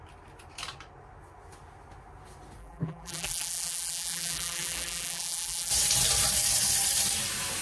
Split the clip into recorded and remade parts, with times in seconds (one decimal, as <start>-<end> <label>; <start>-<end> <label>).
0.0-2.6 recorded; 2.6-5.7 remade; 5.7-7.6 recorded